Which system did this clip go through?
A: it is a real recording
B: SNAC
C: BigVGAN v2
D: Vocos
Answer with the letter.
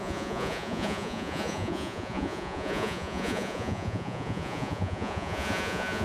D